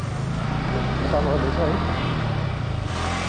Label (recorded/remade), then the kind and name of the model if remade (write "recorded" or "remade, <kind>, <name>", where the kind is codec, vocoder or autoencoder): recorded